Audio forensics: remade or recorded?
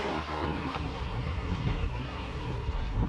remade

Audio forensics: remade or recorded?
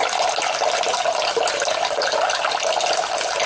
recorded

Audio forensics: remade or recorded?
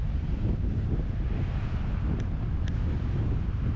recorded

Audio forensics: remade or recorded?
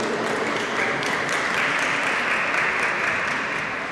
recorded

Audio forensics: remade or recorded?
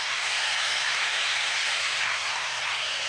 remade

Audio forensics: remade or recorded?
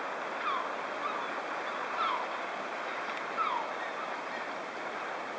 recorded